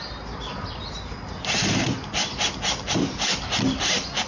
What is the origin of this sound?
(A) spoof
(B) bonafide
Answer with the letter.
A